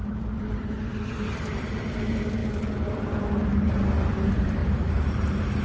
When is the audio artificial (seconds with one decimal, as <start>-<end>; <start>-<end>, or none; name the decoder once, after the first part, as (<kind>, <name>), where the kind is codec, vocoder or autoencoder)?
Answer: 0.0-1.7 (vocoder, BigVGAN v2); 4.6-5.6